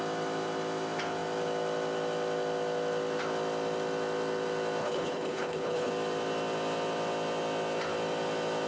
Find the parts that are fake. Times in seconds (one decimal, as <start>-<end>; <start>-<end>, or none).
4.8-5.9